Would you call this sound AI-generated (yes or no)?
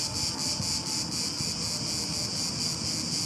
no